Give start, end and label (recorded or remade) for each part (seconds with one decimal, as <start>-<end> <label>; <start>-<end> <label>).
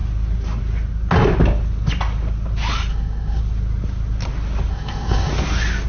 0.0-2.9 recorded; 2.9-3.4 remade; 3.4-4.7 recorded; 4.7-5.3 remade; 5.3-5.9 recorded